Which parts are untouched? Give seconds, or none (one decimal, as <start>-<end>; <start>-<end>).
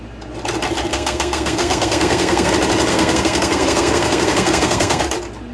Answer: 0.0-0.9; 2.5-2.9; 5.0-5.5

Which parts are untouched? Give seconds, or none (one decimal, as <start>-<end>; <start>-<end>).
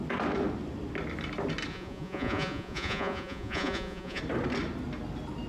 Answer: 0.0-1.7; 4.2-5.5